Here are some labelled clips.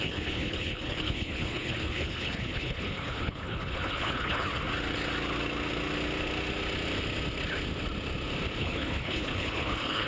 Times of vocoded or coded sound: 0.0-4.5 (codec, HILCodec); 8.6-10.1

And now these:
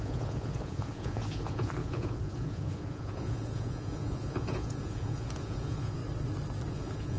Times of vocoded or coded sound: 0.0-6.0 (vocoder, Vocos); 6.7-7.2

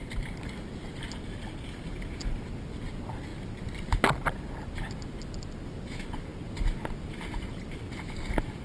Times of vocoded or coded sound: none

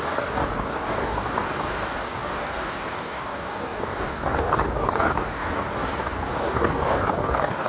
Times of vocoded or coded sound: 0.0-7.7 (codec, DAC)

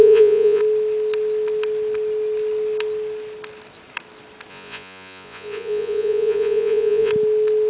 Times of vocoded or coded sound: 0.0-0.6 (vocoder, Vocos); 4.5-7.1